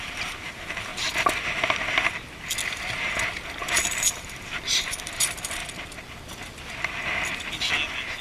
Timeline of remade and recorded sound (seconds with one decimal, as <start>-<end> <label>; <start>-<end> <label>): 0.0-0.9 remade; 0.9-3.6 recorded; 3.6-5.6 remade; 5.6-8.2 recorded